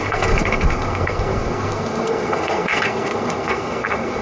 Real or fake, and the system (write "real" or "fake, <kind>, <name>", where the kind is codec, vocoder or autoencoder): fake, codec, SNAC